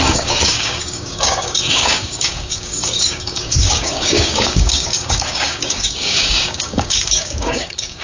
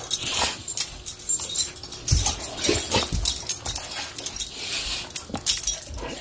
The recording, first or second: second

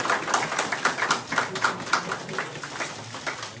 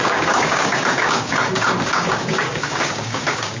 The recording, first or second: first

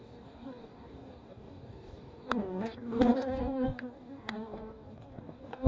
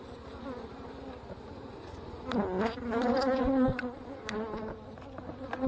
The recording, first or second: second